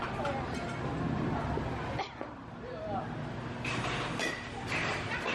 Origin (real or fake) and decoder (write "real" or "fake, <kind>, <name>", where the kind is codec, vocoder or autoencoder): real